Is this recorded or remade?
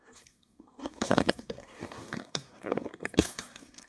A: remade